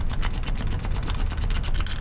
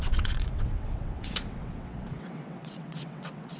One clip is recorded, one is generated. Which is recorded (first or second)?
first